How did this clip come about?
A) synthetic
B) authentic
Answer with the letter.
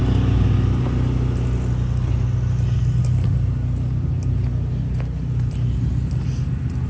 B